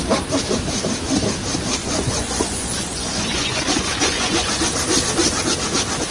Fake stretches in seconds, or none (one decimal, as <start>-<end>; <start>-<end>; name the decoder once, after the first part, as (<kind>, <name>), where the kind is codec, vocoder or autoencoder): 1.8-4.6 (vocoder, Vocos)